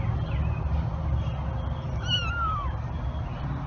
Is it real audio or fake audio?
real